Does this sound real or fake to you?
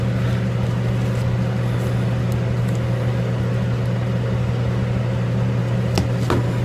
real